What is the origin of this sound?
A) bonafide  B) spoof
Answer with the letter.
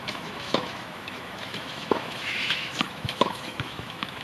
B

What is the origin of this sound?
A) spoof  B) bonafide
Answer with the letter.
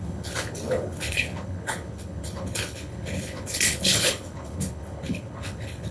A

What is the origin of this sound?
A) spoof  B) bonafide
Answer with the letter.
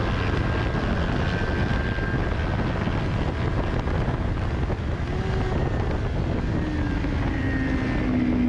B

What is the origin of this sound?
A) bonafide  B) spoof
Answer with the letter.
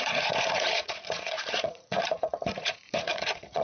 B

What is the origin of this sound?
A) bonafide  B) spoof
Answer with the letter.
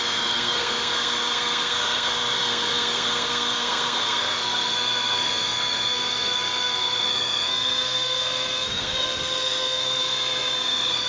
B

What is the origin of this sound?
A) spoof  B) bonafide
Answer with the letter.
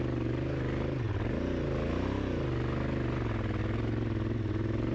B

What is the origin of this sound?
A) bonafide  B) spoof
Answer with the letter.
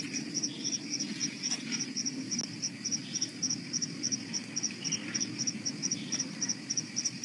A